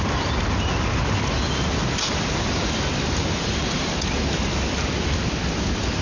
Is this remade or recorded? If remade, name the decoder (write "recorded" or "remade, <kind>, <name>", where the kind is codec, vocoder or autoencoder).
recorded